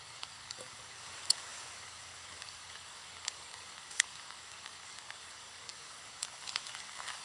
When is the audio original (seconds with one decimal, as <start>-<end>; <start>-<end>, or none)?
none

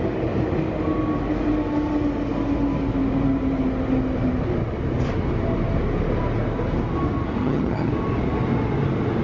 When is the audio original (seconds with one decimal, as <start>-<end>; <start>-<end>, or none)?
0.0-7.4; 7.9-9.2

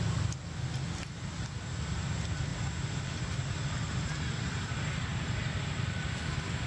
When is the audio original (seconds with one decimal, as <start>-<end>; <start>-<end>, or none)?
0.0-6.7

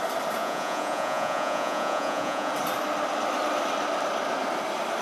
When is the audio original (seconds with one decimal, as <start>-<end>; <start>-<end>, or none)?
0.0-0.4; 2.5-5.0

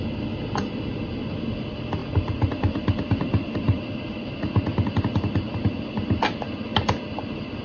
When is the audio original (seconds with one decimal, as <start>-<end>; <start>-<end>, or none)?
0.0-7.6

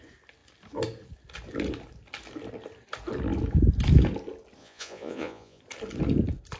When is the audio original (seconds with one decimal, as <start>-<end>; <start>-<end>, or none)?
0.0-4.6; 5.6-6.6

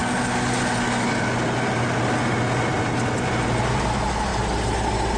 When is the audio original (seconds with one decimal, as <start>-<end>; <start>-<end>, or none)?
0.0-5.2